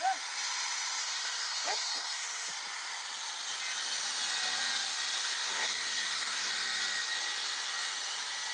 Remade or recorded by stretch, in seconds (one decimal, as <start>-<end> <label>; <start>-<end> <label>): 0.0-1.0 recorded; 1.0-2.5 remade; 2.5-5.2 recorded; 5.2-6.5 remade; 6.5-8.5 recorded